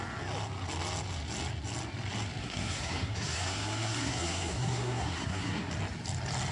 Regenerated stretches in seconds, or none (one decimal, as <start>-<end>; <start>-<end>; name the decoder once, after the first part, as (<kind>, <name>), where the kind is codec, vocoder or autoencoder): 2.4-5.7 (codec, SNAC)